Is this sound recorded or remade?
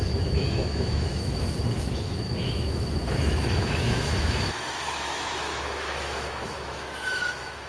remade